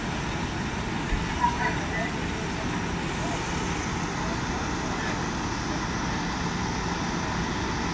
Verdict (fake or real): real